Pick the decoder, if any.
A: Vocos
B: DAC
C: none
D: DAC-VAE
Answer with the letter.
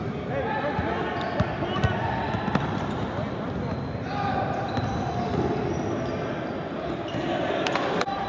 C